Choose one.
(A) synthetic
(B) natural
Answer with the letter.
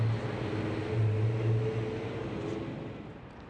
B